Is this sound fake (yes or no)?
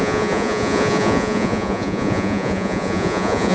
yes